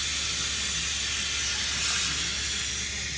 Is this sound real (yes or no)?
yes